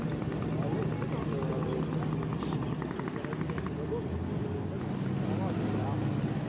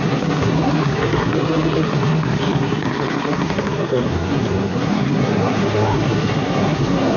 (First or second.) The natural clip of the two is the first